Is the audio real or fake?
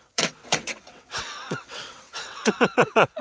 fake